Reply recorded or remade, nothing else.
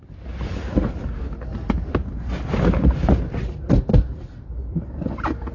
recorded